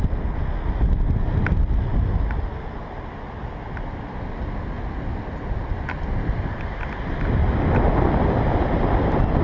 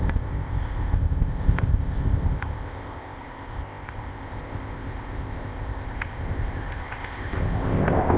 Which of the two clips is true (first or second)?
first